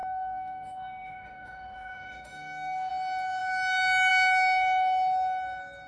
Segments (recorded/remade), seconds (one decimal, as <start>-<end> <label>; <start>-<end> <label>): 0.0-2.9 remade; 2.9-5.9 recorded